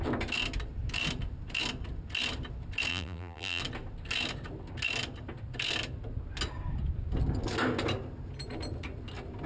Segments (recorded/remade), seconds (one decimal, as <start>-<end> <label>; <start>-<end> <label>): 0.0-2.9 recorded; 2.9-3.6 remade; 3.6-9.5 recorded